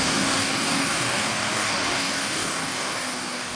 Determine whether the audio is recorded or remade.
remade